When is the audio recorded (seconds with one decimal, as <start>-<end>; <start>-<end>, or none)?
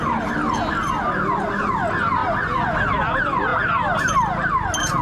0.0-5.0